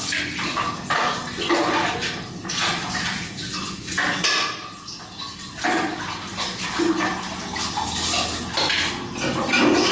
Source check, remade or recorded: recorded